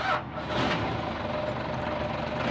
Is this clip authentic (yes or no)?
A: yes